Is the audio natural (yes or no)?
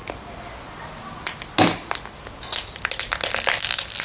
yes